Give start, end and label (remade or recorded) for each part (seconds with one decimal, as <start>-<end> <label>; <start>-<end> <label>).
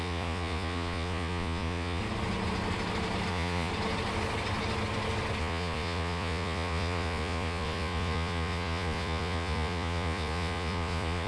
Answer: 0.0-2.0 remade; 2.0-3.3 recorded; 3.3-3.7 remade; 3.7-5.4 recorded; 5.4-11.3 remade